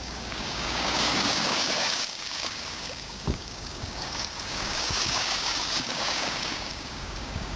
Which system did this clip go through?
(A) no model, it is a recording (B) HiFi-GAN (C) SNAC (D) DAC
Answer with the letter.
D